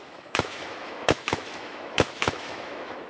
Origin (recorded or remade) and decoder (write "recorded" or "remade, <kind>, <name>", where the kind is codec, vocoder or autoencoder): remade, autoencoder, DAC-VAE